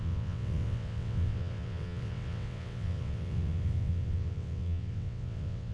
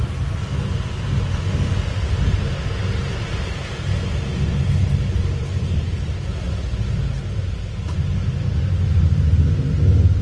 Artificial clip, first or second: first